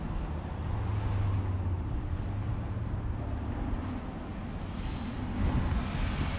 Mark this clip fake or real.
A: real